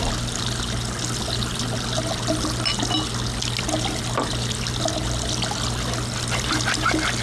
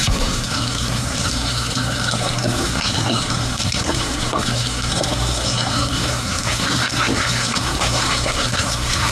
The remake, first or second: second